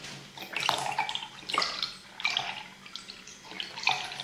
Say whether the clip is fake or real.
real